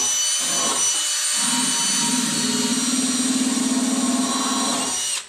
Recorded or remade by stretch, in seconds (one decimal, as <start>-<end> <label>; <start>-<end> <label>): 0.0-5.3 recorded